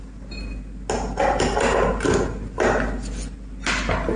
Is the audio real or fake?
real